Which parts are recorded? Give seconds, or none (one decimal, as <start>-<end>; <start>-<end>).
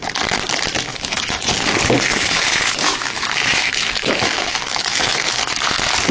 0.0-0.9; 1.5-2.1; 5.4-6.1